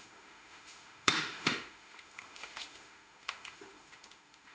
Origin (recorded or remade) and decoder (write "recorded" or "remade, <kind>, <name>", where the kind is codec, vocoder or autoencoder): remade, autoencoder, DAC-VAE